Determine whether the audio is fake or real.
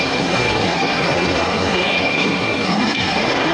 fake